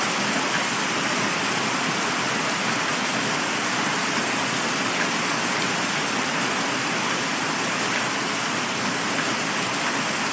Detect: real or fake real